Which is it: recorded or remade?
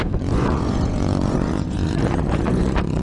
remade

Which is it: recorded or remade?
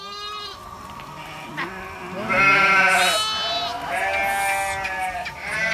recorded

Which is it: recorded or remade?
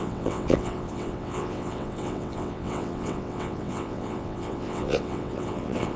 remade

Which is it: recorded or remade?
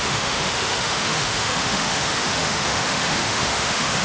remade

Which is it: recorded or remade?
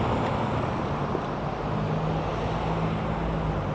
recorded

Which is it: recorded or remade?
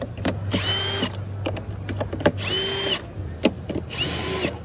recorded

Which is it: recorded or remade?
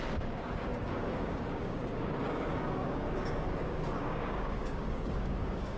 remade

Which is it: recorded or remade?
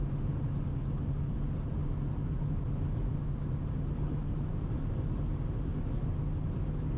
recorded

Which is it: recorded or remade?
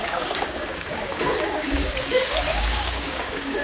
remade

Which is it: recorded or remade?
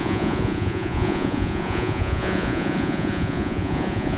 remade